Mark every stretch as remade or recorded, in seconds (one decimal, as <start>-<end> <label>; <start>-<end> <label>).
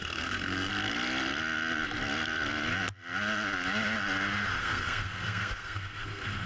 0.0-0.7 remade; 0.7-4.6 recorded; 4.6-6.5 remade